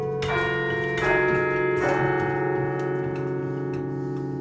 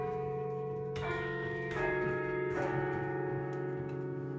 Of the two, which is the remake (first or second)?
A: second